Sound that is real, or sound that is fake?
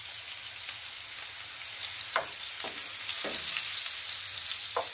real